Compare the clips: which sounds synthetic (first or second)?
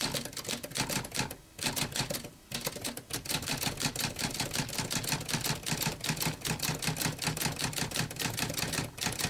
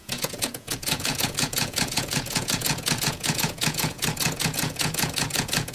second